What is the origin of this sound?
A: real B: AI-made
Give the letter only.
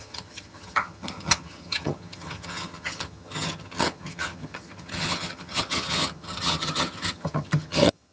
B